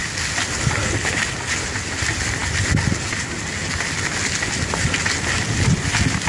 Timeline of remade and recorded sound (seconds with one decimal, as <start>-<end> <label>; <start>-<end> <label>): 0.0-6.3 recorded